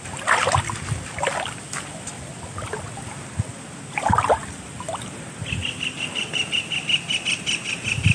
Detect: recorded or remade recorded